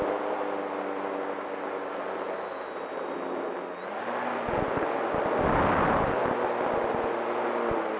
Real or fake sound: real